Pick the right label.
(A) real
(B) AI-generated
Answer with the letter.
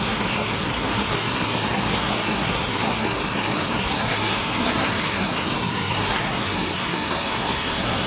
B